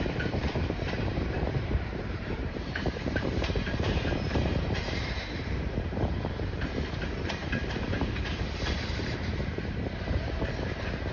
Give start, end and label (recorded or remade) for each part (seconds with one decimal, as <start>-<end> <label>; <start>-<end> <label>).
0.0-11.1 remade